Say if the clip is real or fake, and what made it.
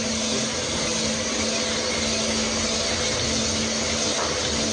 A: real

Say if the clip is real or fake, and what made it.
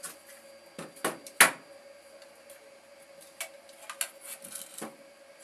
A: real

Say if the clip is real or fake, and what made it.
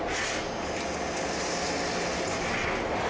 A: real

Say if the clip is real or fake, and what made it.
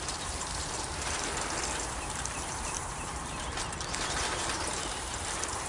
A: fake, vocoder, BigVGAN v2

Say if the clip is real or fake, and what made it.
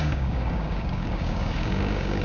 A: fake, codec, DAC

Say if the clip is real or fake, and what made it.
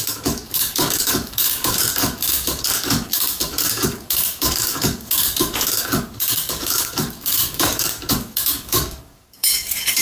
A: fake, codec, DAC